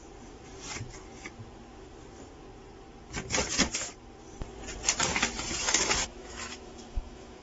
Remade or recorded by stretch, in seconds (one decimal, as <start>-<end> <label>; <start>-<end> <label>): 0.0-5.6 recorded; 5.6-7.4 remade